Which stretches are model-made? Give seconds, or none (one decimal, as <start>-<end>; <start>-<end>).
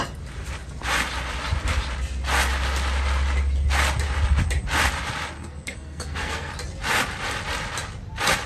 5.4-6.5